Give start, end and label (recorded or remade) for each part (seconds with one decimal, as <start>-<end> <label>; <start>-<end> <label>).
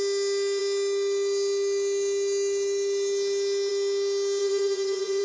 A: 0.0-4.4 recorded; 4.4-5.2 remade